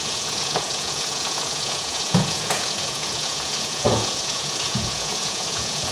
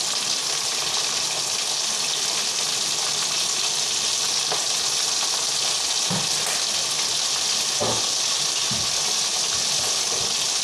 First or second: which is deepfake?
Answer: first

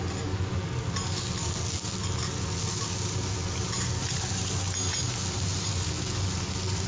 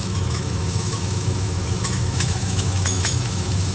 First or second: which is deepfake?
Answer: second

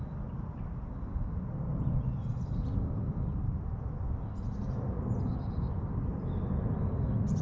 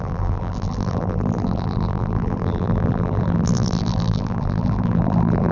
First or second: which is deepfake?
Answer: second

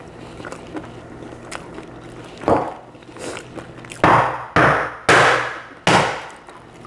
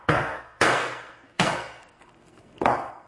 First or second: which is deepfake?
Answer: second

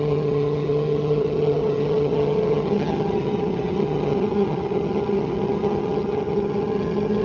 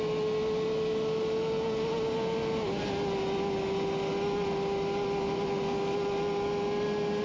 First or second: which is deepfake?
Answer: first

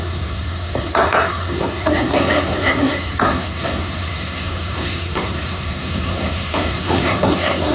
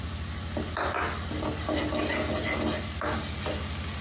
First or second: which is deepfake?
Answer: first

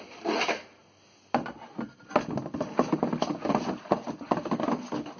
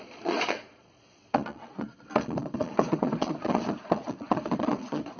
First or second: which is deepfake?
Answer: second